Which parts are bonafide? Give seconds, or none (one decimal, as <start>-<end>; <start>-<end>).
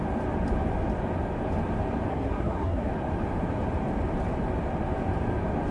0.0-2.1; 2.9-5.7